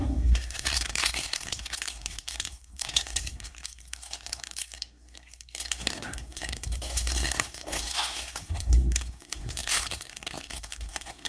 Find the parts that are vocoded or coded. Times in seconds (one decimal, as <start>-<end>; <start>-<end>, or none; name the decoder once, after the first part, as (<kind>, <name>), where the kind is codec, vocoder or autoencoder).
0.0-11.3 (codec, SNAC)